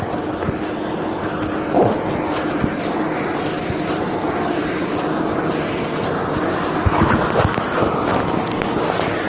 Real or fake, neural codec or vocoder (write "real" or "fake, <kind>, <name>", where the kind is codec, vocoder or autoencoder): real